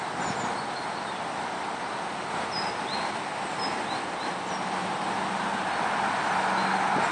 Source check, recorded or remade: recorded